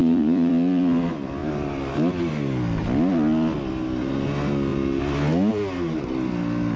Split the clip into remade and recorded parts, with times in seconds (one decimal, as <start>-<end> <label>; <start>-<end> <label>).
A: 0.0-0.5 remade; 0.5-6.8 recorded